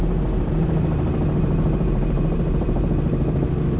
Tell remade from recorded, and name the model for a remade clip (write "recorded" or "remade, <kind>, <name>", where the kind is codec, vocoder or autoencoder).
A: remade, vocoder, BigVGAN v2